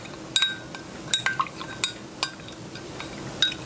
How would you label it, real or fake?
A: real